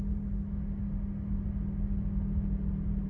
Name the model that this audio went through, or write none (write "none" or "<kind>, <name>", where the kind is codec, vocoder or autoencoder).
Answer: none